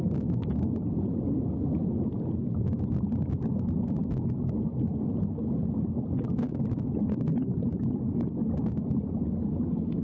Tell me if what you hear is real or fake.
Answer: real